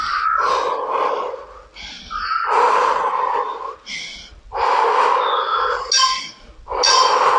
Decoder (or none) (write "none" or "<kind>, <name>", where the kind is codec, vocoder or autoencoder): none